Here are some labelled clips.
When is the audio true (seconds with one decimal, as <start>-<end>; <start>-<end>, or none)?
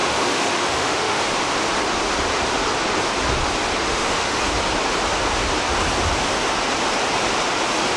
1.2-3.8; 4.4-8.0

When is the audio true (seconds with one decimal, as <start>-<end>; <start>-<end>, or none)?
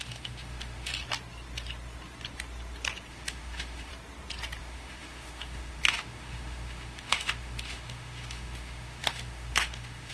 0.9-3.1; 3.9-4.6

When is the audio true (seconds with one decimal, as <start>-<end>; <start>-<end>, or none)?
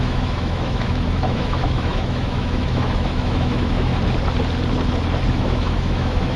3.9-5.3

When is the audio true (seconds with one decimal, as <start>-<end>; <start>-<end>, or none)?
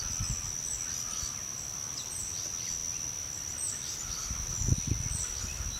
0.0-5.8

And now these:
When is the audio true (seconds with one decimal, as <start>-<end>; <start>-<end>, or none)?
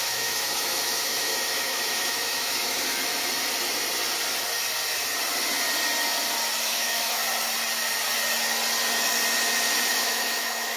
3.1-6.6; 7.2-9.9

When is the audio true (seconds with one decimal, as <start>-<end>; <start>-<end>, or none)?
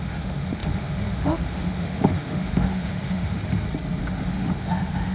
3.4-4.0